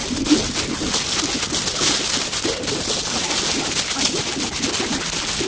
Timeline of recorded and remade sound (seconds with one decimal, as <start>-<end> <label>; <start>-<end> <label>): 0.0-5.5 recorded

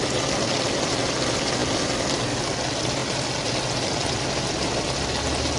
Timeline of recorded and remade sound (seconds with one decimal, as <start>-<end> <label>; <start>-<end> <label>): 0.0-5.6 recorded

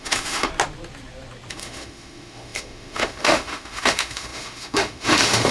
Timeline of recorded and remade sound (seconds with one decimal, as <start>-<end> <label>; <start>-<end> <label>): 0.0-0.5 remade; 0.5-1.5 recorded; 1.5-5.5 remade

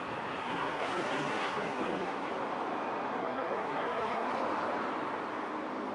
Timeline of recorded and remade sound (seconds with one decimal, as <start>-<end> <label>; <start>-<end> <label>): 0.0-0.4 recorded; 0.4-2.3 remade; 2.3-3.2 recorded; 3.2-4.3 remade; 4.3-5.9 recorded

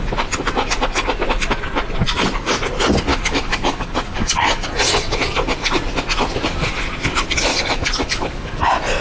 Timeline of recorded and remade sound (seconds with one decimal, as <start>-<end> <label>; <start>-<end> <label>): 0.0-3.1 recorded; 3.1-4.7 remade; 4.7-7.5 recorded; 7.5-8.6 remade; 8.6-9.0 recorded

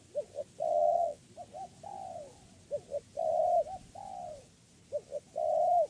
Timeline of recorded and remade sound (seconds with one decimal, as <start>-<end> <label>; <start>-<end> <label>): 0.0-0.7 recorded; 0.7-1.2 remade; 1.2-5.9 recorded